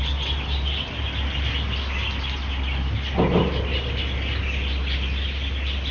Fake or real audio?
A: real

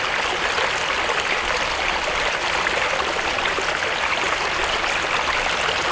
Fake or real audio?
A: real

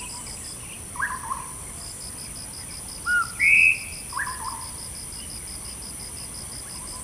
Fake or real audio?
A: real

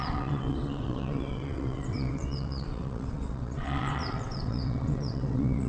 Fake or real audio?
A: fake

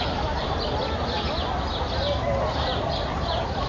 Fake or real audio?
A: real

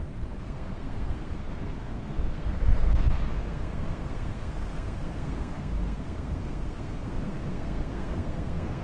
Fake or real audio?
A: fake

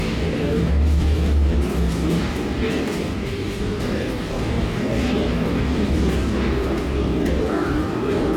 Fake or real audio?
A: fake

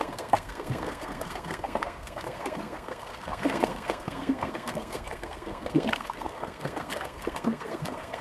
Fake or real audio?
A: fake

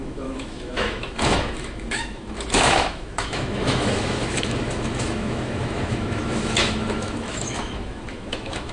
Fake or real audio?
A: fake